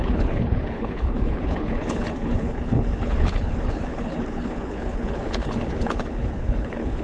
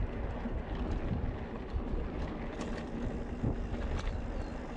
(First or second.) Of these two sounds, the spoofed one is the first